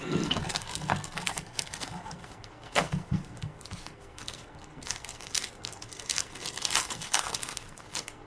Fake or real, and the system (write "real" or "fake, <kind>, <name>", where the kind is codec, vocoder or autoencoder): fake, codec, SNAC